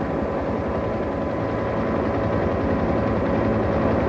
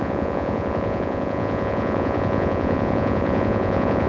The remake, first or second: second